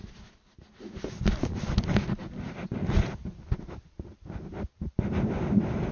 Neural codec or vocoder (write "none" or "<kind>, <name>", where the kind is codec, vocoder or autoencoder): none